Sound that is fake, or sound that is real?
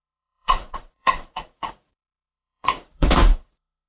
fake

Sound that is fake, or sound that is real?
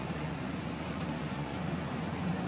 fake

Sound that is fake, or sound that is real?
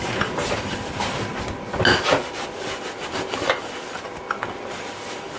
real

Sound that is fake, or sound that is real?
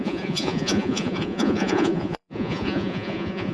fake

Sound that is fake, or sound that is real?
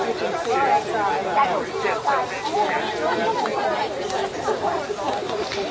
real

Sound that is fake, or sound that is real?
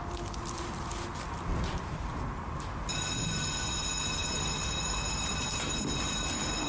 real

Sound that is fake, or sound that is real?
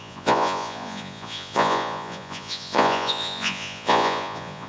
fake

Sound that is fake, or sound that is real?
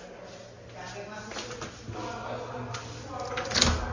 real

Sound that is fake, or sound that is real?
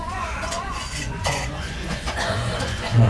fake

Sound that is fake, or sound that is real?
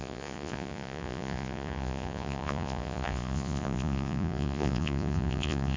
fake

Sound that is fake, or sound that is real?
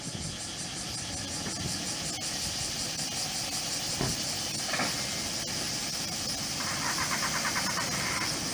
real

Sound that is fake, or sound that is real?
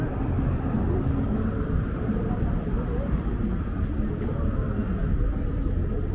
real